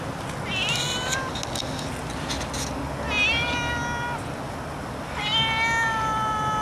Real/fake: real